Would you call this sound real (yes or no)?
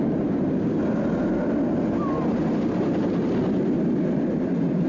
yes